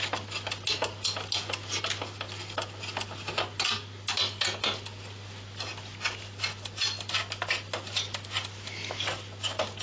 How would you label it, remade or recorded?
recorded